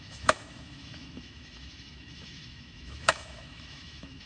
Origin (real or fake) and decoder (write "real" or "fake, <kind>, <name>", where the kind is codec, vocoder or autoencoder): fake, autoencoder, DAC-VAE